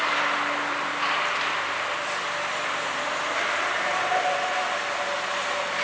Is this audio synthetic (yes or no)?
no